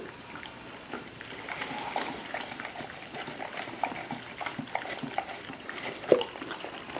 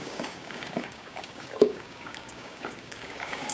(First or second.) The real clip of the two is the first